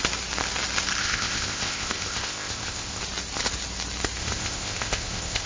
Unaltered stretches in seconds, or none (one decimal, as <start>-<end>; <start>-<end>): 0.0-1.0; 3.0-4.2